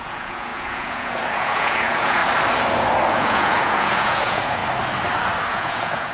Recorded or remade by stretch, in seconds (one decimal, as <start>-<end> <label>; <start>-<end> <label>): 0.0-2.2 remade; 2.2-3.1 recorded; 3.1-4.6 remade; 4.6-5.5 recorded; 5.5-6.1 remade